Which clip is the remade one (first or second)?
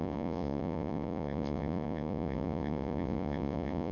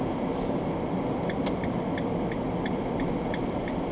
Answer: first